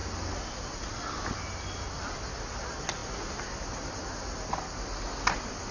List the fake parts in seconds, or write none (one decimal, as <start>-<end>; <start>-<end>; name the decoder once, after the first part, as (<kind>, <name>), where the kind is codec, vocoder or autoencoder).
none